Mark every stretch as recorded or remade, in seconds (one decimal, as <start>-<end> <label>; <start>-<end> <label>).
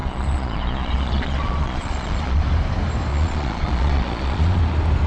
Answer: 0.0-2.4 remade; 2.4-3.1 recorded; 3.1-4.6 remade; 4.6-5.1 recorded